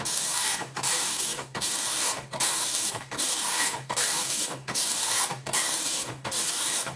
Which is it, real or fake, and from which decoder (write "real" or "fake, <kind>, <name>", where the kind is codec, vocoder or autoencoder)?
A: fake, codec, DAC